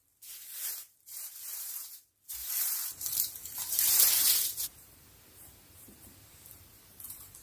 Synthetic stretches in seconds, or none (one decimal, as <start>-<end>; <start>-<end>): 0.7-7.4